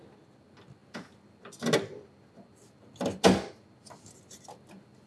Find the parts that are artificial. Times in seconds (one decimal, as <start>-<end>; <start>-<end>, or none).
none